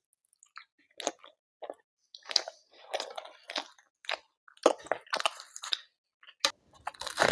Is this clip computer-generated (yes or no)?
no